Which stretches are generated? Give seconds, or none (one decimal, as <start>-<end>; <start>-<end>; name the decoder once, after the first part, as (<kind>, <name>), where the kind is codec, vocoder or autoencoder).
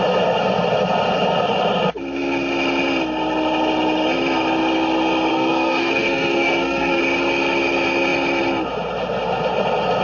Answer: 5.3-7.0 (codec, SNAC)